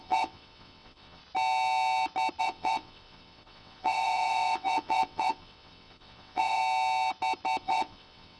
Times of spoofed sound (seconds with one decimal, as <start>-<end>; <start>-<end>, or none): 0.0-1.2; 2.4-6.6; 7.6-8.4